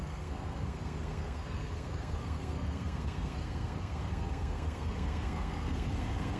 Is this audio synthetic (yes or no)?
yes